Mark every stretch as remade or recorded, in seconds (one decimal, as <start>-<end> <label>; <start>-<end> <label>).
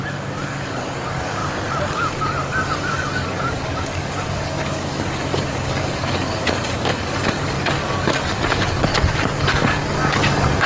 0.0-1.4 remade; 1.4-1.9 recorded; 1.9-8.9 remade; 8.9-9.4 recorded; 9.4-10.7 remade